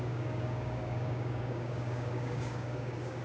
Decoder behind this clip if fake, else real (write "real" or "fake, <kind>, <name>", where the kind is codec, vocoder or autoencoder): fake, codec, DAC